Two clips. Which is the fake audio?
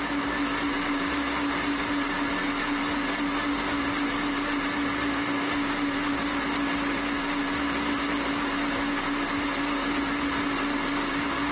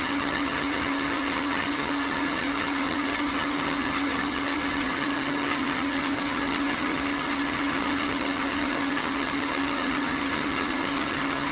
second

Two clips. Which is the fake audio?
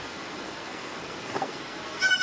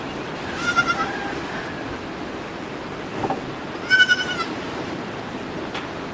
first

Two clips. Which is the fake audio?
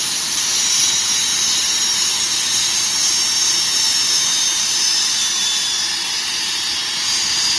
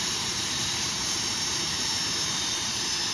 second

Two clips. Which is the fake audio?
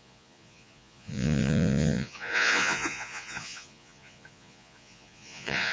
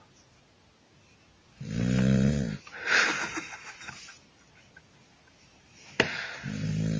first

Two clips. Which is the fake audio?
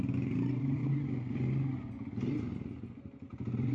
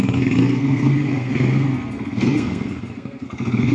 second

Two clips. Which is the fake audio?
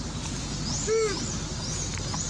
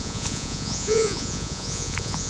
second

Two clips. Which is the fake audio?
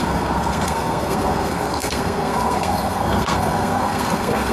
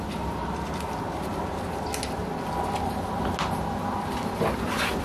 first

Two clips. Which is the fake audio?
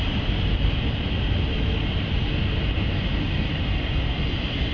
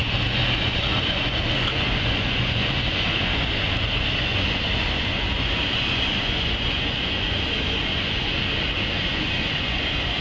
second